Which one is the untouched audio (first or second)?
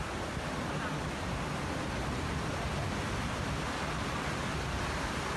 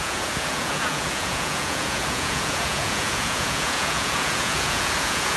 first